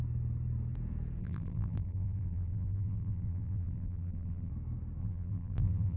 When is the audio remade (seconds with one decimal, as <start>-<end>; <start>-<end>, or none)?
1.2-4.5; 5.0-6.0